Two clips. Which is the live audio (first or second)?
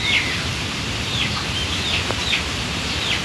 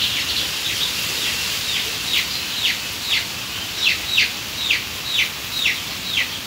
second